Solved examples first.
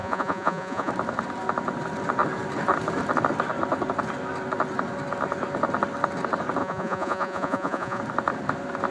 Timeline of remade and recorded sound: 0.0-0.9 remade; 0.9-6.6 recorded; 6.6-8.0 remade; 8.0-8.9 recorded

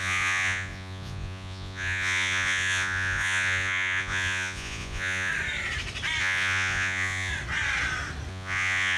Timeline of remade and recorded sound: 0.0-5.3 remade; 5.3-6.2 recorded; 6.2-7.3 remade; 7.3-8.3 recorded; 8.3-9.0 remade

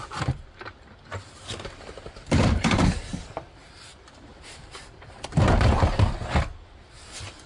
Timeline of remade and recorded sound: 0.0-2.2 recorded; 2.2-3.2 remade; 3.2-3.9 recorded; 3.9-5.9 remade; 5.9-7.5 recorded

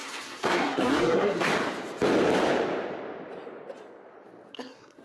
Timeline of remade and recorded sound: 0.0-1.5 remade; 1.5-4.5 recorded; 4.5-5.0 remade